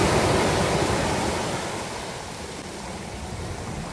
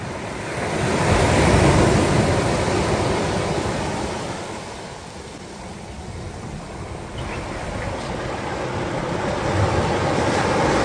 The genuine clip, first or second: second